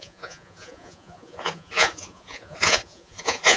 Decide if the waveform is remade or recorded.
remade